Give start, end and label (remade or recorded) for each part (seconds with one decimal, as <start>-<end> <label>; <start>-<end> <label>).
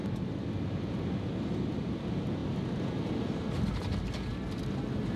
0.0-5.2 recorded